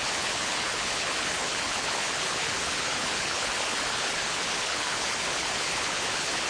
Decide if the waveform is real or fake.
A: fake